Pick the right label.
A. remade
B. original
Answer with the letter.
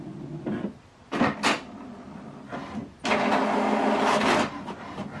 B